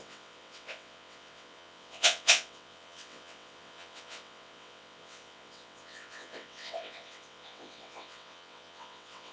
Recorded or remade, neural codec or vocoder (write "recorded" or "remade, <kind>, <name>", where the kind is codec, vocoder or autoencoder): remade, vocoder, WaveNeXt